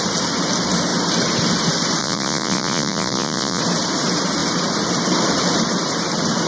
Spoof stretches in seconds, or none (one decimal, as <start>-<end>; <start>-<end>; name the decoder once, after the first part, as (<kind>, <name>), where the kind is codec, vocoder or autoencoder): 2.0-3.6 (vocoder, Vocos)